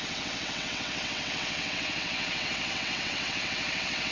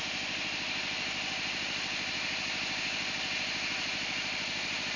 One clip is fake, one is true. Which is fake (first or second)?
first